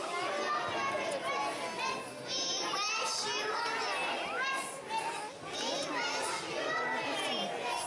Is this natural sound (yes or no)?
yes